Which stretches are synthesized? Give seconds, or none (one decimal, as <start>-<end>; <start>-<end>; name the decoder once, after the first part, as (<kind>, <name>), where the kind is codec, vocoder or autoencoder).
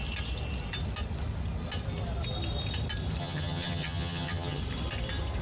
3.2-4.6 (vocoder, HiFi-GAN)